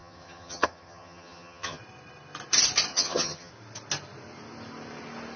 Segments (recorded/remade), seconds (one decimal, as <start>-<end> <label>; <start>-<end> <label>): 0.0-1.8 remade; 1.8-2.9 recorded; 2.9-3.5 remade; 3.5-5.4 recorded